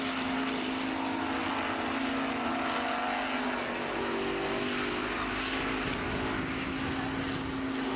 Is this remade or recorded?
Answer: recorded